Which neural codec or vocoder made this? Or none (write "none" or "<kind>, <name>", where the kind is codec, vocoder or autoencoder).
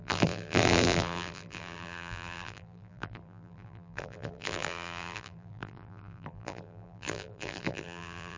vocoder, BigVGAN v2